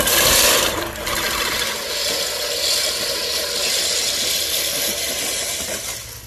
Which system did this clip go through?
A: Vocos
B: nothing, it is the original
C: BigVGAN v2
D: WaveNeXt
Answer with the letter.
B